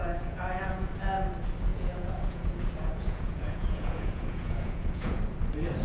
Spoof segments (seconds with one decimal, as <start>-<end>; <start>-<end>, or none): 0.0-0.9; 1.7-5.2